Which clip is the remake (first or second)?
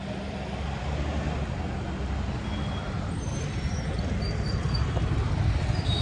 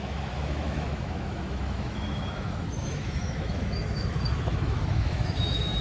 second